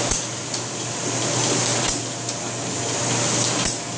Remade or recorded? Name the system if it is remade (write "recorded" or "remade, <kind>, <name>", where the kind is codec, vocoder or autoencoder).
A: recorded